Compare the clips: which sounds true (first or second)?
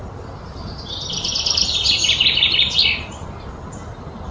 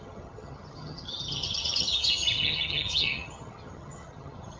first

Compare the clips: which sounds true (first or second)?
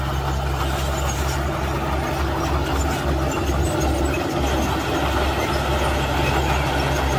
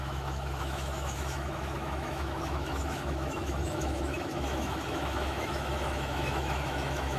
first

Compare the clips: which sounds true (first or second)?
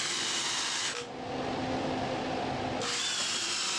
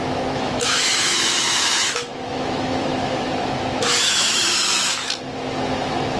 first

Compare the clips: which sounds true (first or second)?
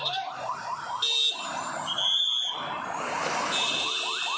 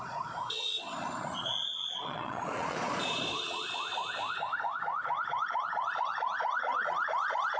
first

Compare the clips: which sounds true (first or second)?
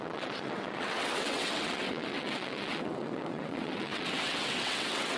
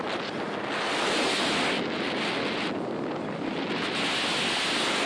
second